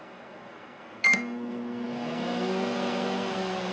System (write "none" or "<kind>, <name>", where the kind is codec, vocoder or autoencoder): codec, SNAC